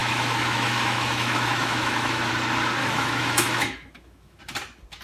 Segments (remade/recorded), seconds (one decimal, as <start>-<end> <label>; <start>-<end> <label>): 0.0-2.3 remade; 2.3-2.8 recorded; 2.8-4.4 remade; 4.4-5.0 recorded